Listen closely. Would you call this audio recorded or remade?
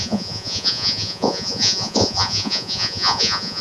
remade